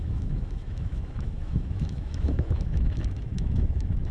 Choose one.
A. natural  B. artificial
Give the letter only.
B